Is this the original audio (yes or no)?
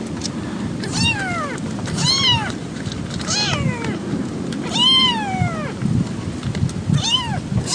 no